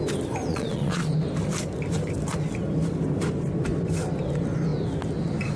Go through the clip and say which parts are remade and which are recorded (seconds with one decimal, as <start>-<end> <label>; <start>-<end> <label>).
0.0-0.5 recorded; 0.5-1.1 remade; 1.1-5.6 recorded